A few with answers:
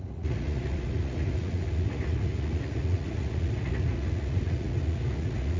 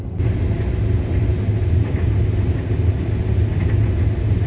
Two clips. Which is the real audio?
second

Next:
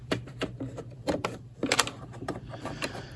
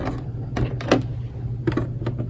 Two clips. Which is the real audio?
second